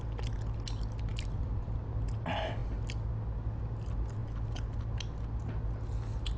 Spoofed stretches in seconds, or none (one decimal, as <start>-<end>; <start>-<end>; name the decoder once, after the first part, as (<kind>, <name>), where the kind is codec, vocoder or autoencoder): 1.1-1.8 (vocoder, BigVGAN v2)